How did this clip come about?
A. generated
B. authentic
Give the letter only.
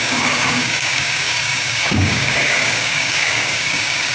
A